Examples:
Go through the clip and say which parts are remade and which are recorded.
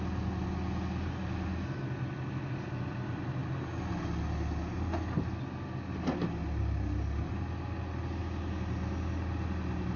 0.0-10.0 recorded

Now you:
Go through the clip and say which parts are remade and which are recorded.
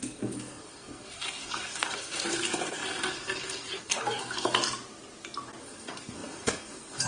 0.0-4.6 remade; 4.6-5.6 recorded; 5.6-7.1 remade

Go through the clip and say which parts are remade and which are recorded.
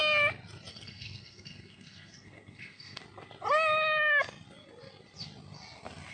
0.0-0.7 recorded; 0.7-3.0 remade; 3.0-6.1 recorded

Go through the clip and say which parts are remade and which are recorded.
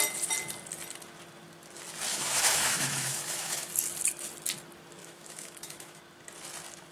0.0-2.1 recorded; 2.1-3.7 remade; 3.7-5.0 recorded; 5.0-6.0 remade; 6.0-6.9 recorded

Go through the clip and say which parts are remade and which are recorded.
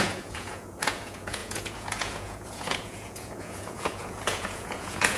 0.0-5.2 remade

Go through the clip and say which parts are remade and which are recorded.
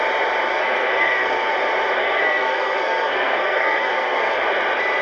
0.0-0.5 recorded; 0.5-1.5 remade; 1.5-2.0 recorded; 2.0-4.3 remade; 4.3-5.0 recorded